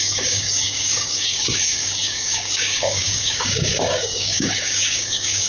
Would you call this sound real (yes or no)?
no